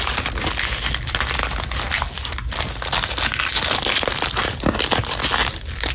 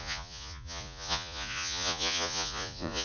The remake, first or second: second